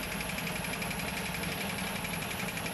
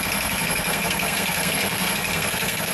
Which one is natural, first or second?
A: first